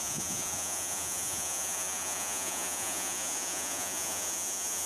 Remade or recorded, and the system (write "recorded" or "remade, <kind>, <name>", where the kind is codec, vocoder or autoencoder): remade, vocoder, Vocos